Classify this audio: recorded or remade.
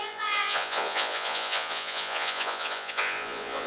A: remade